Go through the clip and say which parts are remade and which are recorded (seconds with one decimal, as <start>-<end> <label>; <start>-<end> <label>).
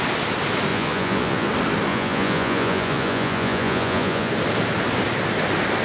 0.0-0.7 recorded; 0.7-1.5 remade; 1.5-1.9 recorded; 1.9-4.3 remade; 4.3-5.8 recorded